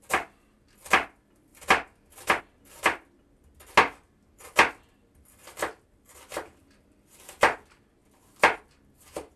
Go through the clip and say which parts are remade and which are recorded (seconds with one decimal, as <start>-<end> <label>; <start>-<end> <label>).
0.0-1.5 recorded; 1.5-2.4 remade; 2.4-9.4 recorded